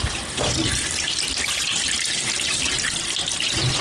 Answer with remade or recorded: recorded